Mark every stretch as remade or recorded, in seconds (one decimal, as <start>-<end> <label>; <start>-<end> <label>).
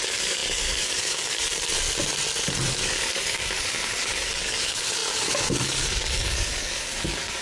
0.0-1.5 remade; 1.5-2.7 recorded; 2.7-7.4 remade